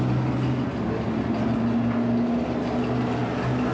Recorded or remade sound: recorded